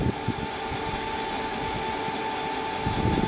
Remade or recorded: recorded